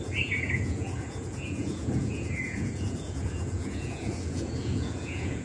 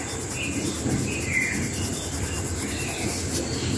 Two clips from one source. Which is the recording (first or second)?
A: second